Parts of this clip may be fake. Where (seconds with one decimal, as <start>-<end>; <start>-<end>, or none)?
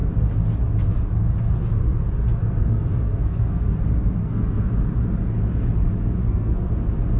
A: 2.4-3.8; 4.2-4.7; 6.2-6.7